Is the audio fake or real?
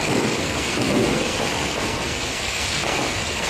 fake